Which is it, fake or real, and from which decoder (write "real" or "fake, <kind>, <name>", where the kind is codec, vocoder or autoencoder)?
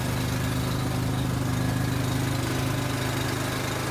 real